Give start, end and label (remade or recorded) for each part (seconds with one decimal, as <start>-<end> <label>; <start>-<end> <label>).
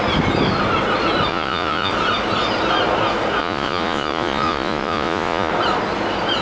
0.0-1.3 recorded; 1.3-1.9 remade; 1.9-3.4 recorded; 3.4-5.5 remade; 5.5-6.4 recorded